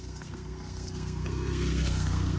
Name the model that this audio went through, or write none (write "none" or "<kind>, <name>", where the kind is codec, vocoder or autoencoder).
codec, SNAC